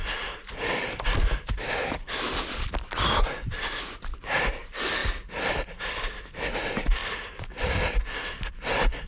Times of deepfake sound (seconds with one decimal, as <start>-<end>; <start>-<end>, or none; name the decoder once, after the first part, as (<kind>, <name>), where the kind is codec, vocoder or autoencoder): none